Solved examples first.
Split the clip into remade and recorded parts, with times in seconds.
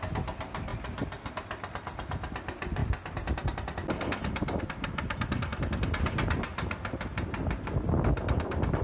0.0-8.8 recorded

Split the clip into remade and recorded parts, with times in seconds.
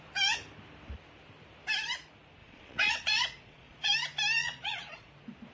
0.0-2.4 recorded; 2.4-3.9 remade; 3.9-4.4 recorded; 4.4-5.1 remade; 5.1-5.5 recorded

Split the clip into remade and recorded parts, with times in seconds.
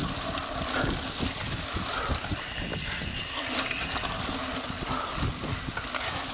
0.0-6.3 recorded